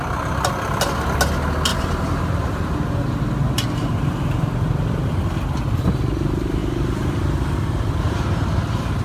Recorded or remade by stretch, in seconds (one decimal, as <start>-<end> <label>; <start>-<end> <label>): 0.0-1.7 recorded; 1.7-5.2 remade; 5.2-9.0 recorded